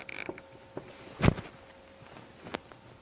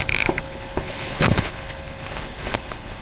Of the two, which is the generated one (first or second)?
second